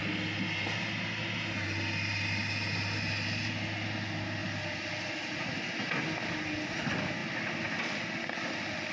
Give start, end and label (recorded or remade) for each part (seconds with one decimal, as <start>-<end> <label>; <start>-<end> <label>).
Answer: 0.0-8.9 recorded